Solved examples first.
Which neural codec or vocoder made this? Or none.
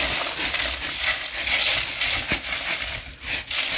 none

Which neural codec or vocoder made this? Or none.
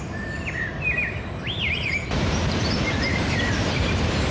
vocoder, BigVGAN v2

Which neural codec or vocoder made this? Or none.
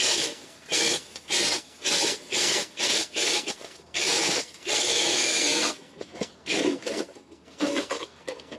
codec, SNAC